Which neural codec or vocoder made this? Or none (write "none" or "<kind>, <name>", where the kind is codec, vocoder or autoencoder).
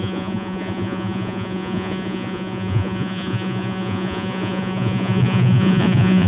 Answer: vocoder, Vocos